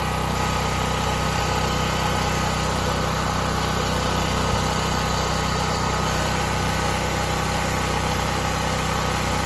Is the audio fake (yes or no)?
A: no